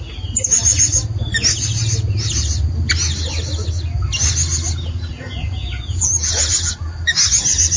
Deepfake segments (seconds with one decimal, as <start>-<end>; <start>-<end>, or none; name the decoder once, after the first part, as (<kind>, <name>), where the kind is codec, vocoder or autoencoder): 5.1-6.7 (vocoder, Vocos)